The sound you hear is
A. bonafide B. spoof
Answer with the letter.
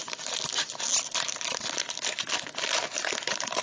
A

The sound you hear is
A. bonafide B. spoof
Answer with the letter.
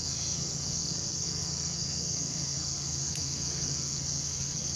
B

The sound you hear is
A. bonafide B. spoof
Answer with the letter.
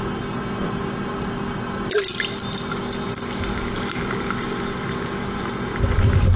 A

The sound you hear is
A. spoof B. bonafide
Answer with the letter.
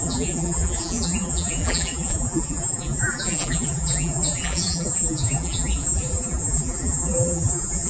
A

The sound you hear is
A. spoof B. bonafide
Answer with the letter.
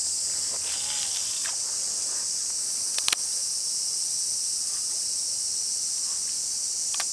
B